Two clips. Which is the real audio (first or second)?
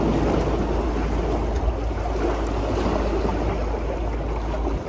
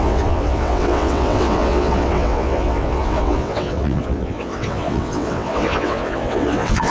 first